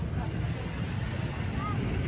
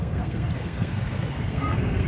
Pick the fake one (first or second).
second